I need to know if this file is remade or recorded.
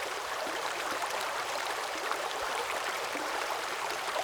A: remade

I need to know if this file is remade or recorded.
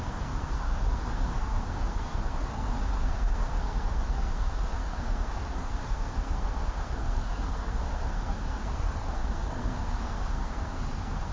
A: remade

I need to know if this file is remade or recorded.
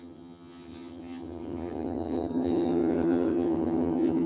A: remade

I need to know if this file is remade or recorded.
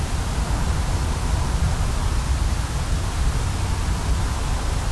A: recorded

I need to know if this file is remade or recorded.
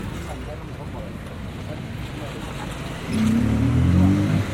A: recorded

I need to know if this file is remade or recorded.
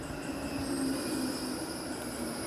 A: recorded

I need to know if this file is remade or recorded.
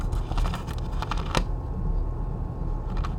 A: recorded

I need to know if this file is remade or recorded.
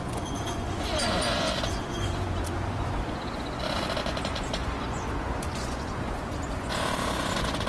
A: remade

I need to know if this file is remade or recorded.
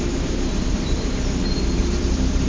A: remade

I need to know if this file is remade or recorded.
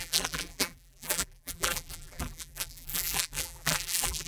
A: remade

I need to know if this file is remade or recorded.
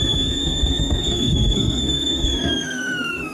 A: remade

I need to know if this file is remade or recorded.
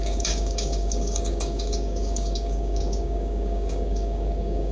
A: remade